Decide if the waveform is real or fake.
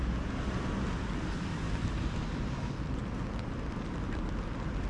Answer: real